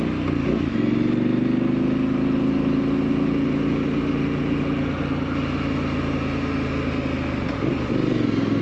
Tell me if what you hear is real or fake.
real